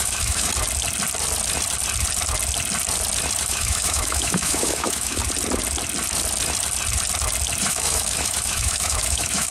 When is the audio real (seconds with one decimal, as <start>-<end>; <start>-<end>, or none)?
0.5-3.4; 5.2-7.6